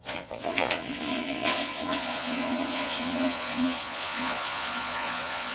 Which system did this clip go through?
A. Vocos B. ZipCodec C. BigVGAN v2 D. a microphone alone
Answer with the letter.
A